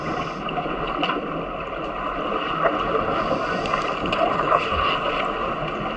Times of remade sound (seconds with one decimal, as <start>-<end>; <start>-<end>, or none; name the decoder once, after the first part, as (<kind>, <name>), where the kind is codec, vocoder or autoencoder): 4.3-4.9 (codec, HILCodec)